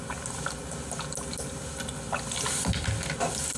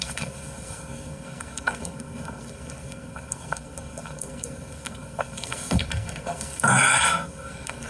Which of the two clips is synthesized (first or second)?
second